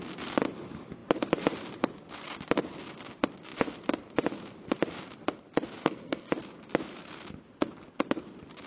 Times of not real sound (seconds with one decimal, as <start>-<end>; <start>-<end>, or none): 5.8-6.3